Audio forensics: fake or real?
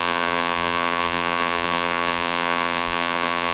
fake